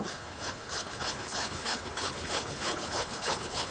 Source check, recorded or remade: remade